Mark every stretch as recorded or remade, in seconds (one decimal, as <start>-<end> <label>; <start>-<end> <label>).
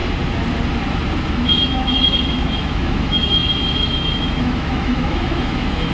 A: 0.0-1.3 recorded; 1.3-5.9 remade